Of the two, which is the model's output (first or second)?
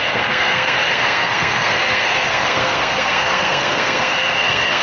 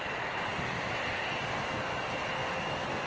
first